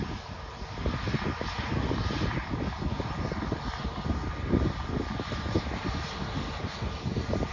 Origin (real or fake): real